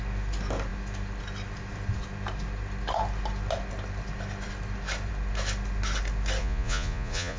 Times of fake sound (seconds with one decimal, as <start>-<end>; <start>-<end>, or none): 6.4-7.4